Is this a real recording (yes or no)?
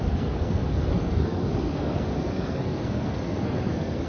no